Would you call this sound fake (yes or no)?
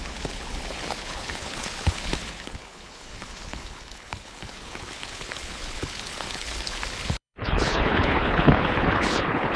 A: yes